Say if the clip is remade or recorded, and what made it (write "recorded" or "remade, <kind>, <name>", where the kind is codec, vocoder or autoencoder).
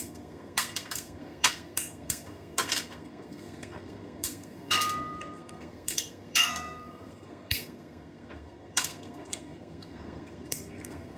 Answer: remade, codec, SNAC